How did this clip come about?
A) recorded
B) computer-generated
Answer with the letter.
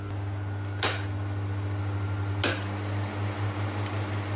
A